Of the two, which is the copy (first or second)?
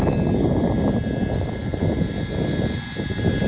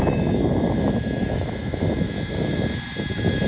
second